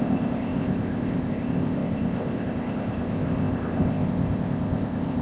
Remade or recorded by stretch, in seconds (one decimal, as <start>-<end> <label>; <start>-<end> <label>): 0.0-5.2 remade